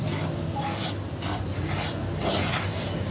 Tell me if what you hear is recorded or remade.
recorded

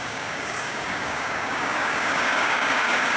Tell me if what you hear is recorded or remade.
remade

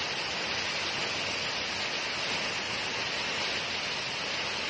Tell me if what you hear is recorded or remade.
recorded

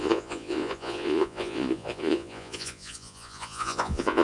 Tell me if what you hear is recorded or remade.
remade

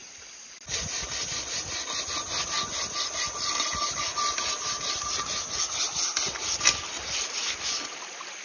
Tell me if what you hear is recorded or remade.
recorded